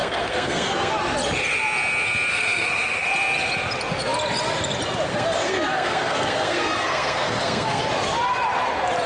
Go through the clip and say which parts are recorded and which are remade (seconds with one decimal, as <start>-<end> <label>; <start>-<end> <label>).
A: 0.0-0.9 remade; 0.9-2.3 recorded; 2.3-3.1 remade; 3.1-5.1 recorded; 5.1-7.8 remade; 7.8-9.1 recorded